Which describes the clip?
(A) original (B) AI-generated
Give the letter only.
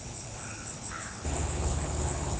B